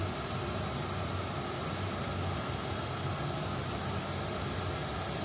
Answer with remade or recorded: recorded